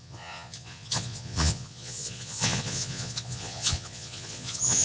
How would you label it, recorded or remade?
remade